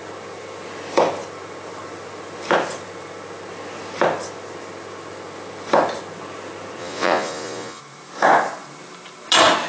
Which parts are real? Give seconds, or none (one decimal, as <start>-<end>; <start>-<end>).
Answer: 0.0-6.8; 7.8-9.7